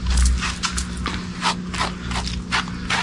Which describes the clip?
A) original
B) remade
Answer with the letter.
A